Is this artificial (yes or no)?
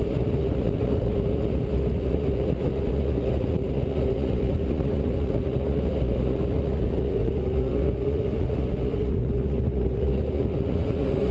yes